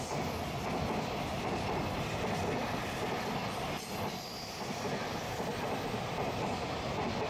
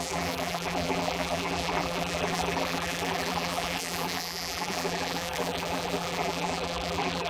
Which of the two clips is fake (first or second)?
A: second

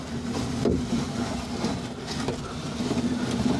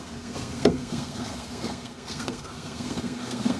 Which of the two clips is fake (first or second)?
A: second